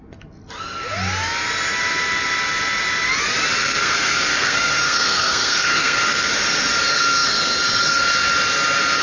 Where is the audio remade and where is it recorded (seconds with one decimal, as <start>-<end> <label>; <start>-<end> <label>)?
0.0-3.6 recorded; 3.6-6.3 remade; 6.3-6.9 recorded; 6.9-7.7 remade; 7.7-9.0 recorded